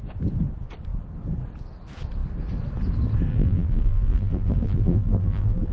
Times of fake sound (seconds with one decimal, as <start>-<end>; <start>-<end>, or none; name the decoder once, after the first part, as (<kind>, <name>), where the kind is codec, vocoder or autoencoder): 3.3-5.7 (vocoder, BigVGAN v2)